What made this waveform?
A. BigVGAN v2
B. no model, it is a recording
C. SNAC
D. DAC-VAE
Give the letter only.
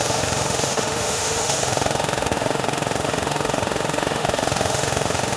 D